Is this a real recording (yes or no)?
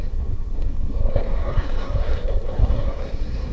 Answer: no